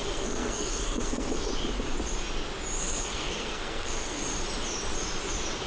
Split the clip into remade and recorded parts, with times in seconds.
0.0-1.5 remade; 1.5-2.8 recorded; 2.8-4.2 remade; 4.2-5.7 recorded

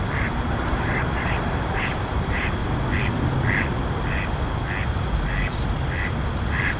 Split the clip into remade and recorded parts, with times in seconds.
0.0-2.6 remade; 2.6-6.8 recorded

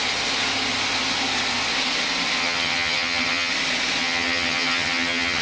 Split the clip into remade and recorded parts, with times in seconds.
0.0-2.4 recorded; 2.4-3.5 remade; 3.5-4.0 recorded; 4.0-5.4 remade

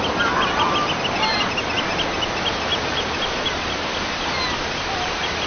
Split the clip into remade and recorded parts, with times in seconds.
0.0-5.5 recorded